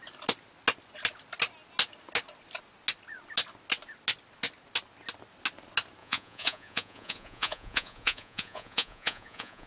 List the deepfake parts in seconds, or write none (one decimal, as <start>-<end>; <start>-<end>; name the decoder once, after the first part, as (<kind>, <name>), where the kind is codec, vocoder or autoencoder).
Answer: 6.0-9.7 (vocoder, Vocos)